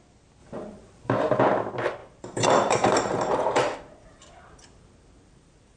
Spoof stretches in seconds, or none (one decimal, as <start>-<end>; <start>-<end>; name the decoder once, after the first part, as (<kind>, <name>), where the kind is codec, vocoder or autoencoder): 0.4-1.4 (vocoder, BigVGAN v2); 2.0-5.8